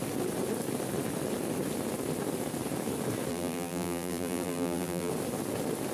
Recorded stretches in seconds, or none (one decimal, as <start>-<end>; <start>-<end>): 0.0-3.3; 5.1-5.9